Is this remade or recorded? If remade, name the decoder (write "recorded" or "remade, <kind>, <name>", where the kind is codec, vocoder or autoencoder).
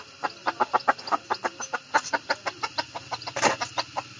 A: recorded